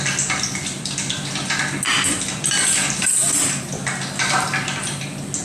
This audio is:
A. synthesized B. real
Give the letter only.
B